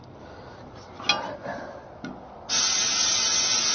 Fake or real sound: real